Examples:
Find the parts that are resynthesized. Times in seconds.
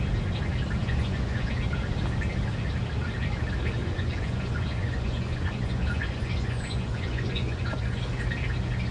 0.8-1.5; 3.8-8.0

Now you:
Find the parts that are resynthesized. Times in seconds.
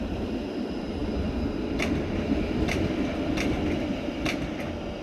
none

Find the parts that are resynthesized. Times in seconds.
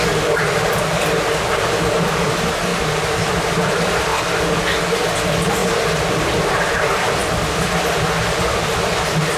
0.0-2.7; 3.3-4.1; 4.8-9.4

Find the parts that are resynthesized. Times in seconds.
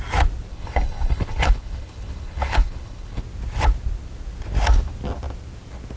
0.5-3.2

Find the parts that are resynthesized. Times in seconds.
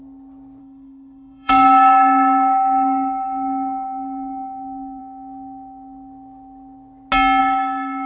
0.6-5.0; 7.4-8.1